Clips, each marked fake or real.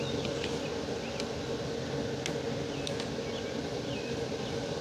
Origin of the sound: real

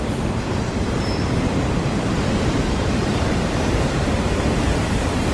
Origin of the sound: fake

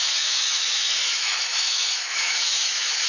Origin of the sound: fake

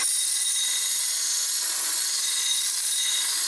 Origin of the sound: real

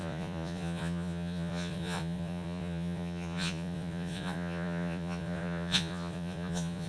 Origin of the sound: fake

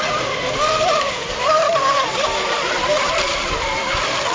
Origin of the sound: fake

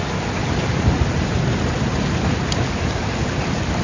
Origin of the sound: real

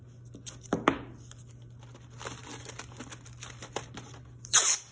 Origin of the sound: real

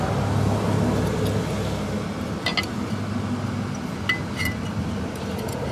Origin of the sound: real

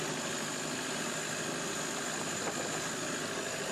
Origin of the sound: real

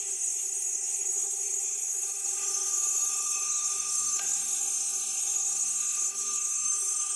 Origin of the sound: fake